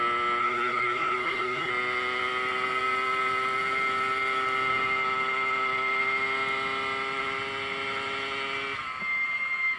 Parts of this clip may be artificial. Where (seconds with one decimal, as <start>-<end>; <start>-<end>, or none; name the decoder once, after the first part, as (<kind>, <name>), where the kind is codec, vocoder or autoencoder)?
0.4-1.7 (codec, SNAC)